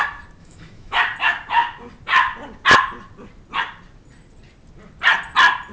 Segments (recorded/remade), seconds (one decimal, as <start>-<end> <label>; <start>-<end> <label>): 0.0-0.4 recorded; 0.4-1.0 remade; 1.0-5.7 recorded